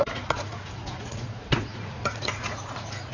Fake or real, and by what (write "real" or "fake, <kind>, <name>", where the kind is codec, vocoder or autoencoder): fake, vocoder, Vocos